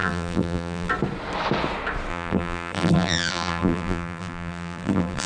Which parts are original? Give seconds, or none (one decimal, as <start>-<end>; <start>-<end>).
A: 0.9-2.1